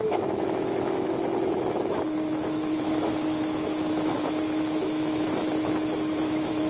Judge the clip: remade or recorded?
remade